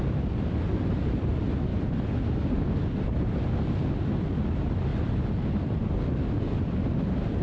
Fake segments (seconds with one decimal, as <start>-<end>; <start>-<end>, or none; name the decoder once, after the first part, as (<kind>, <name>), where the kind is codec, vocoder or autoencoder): none